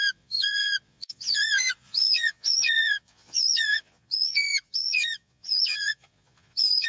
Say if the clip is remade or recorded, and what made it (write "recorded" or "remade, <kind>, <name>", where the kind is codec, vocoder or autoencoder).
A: remade, vocoder, Vocos